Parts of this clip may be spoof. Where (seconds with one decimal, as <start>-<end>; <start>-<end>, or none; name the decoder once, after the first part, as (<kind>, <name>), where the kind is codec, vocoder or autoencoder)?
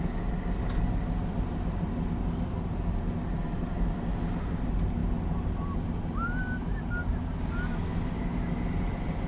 none